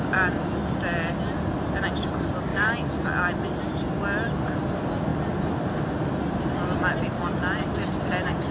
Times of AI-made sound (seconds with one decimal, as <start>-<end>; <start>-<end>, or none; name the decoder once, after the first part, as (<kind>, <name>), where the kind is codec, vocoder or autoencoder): none